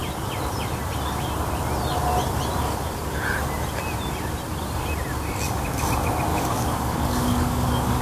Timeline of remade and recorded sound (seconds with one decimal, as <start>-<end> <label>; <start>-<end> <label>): 0.0-6.3 recorded; 6.3-8.0 remade